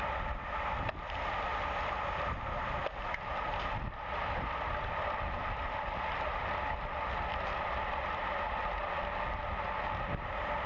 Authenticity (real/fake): real